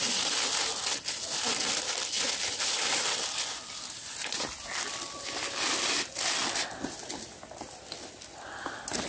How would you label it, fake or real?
real